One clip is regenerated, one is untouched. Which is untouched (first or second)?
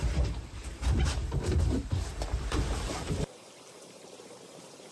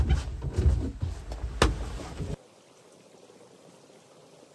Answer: second